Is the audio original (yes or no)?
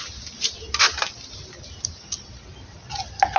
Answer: yes